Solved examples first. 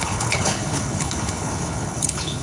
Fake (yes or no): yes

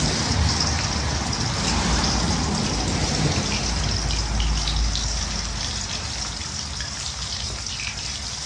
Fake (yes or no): no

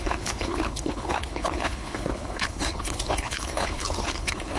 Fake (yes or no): yes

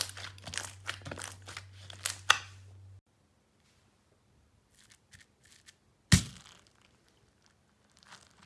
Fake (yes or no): no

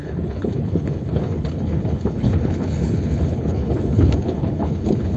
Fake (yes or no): yes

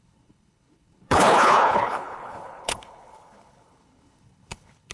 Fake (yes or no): yes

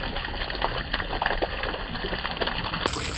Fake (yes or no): no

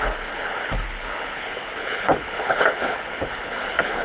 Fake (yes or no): yes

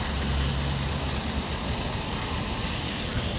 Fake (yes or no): no